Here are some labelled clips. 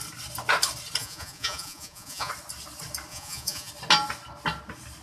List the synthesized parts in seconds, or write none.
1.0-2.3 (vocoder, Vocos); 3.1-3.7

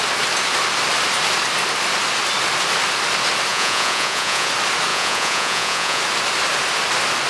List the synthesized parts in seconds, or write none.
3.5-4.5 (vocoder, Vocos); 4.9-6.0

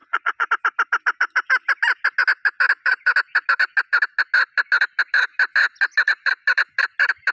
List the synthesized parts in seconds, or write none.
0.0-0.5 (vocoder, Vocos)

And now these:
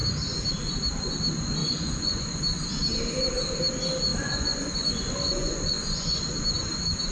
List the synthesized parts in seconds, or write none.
1.6-2.4 (vocoder, Vocos); 4.1-6.2

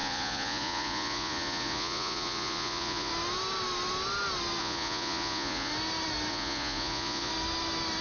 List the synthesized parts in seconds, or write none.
0.0-3.1 (vocoder, Vocos); 4.6-5.7; 6.3-7.3